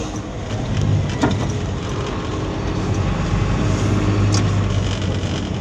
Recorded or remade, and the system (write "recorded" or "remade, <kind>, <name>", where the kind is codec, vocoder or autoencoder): recorded